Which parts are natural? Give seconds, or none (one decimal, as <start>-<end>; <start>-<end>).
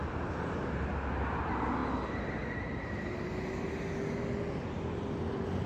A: 0.9-1.8; 4.5-5.7